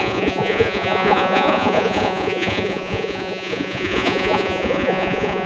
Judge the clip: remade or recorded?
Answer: remade